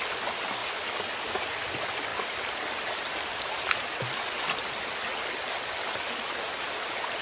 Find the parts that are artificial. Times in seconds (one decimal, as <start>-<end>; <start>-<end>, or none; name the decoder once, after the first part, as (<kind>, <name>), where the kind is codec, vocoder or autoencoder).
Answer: none